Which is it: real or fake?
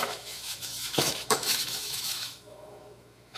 fake